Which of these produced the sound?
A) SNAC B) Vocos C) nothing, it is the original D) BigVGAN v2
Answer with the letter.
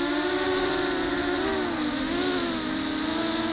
C